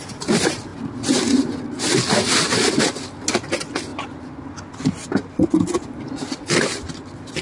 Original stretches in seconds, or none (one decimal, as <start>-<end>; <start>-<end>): 0.0-7.4